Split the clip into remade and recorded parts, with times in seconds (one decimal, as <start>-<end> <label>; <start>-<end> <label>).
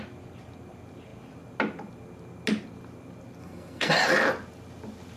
0.0-3.4 recorded; 3.4-3.9 remade; 3.9-5.2 recorded